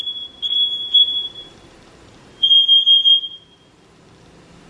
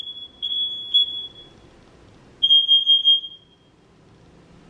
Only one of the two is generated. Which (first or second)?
first